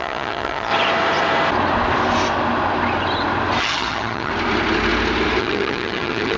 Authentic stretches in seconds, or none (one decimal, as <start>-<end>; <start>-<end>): 0.7-3.6; 4.3-5.4